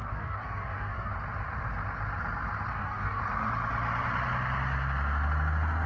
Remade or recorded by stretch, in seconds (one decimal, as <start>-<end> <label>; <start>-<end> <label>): 0.0-1.1 remade; 1.1-2.7 recorded; 2.7-3.2 remade; 3.2-5.9 recorded